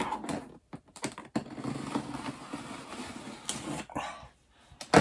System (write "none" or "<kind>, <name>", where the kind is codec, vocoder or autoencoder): none